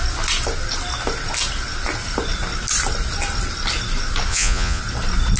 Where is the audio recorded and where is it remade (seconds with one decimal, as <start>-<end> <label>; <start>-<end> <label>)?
0.0-4.3 recorded; 4.3-4.8 remade; 4.8-5.4 recorded